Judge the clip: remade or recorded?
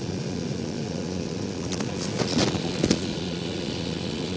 remade